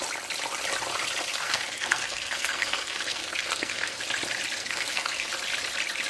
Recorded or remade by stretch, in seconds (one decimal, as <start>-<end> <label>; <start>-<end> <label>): 0.0-1.3 recorded; 1.3-4.0 remade; 4.0-4.6 recorded; 4.6-5.3 remade; 5.3-6.1 recorded